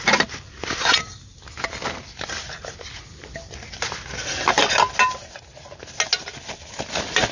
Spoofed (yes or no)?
no